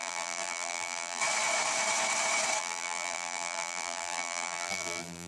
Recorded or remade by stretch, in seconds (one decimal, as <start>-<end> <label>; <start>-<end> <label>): 0.0-1.2 remade; 1.2-2.6 recorded; 2.6-5.3 remade